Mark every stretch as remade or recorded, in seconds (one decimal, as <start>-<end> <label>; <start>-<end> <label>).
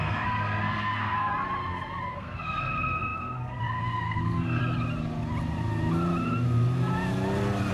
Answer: 0.0-1.3 remade; 1.3-2.1 recorded; 2.1-4.6 remade; 4.6-7.7 recorded